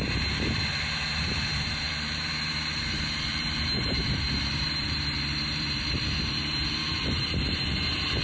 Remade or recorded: remade